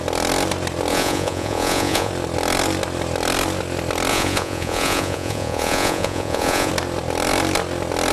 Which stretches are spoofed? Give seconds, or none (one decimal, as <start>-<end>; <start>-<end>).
0.9-2.1; 4.1-6.7